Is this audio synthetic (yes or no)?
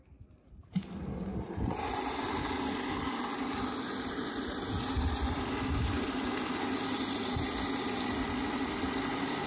no